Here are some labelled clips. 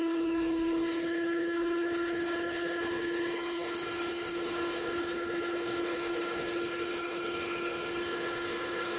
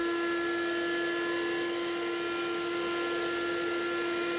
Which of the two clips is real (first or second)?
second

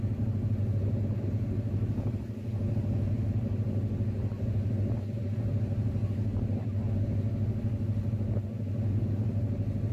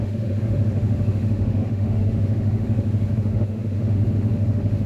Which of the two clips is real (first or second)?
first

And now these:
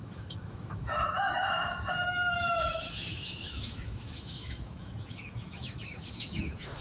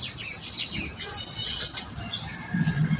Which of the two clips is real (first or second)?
second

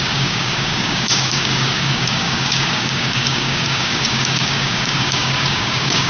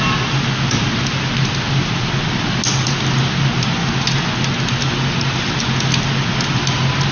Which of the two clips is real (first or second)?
second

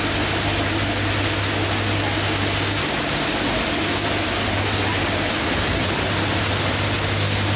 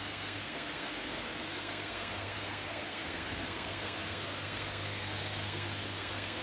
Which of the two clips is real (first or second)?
first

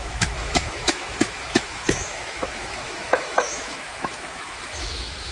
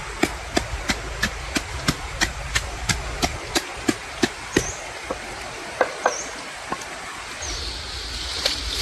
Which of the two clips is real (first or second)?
second